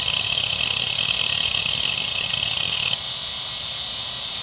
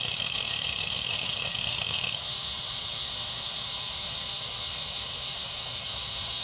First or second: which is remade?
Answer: second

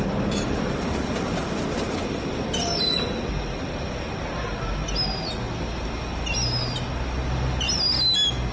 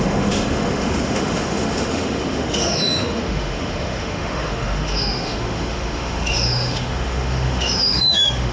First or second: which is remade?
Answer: second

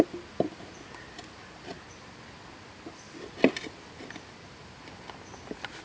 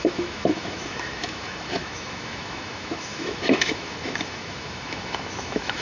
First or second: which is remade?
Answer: second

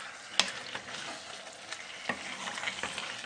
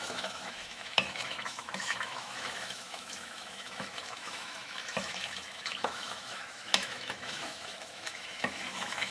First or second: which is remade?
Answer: second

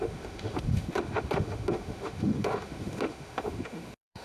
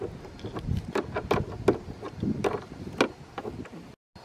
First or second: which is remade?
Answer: first